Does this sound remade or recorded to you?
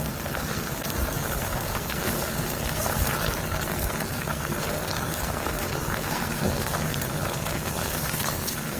remade